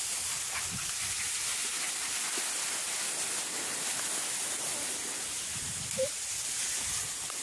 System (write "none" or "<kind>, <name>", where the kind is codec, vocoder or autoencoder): none